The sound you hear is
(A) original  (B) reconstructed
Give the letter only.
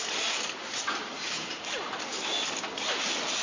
A